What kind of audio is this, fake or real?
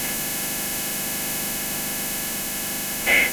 fake